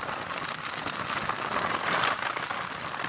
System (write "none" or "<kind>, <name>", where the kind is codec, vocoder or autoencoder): none